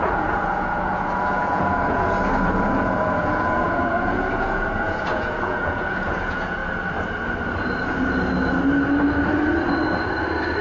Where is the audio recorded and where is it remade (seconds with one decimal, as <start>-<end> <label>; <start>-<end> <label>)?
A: 0.0-6.6 remade; 6.6-10.6 recorded